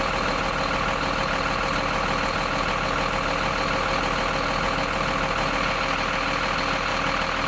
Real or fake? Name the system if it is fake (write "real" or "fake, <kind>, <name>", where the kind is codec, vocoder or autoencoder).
real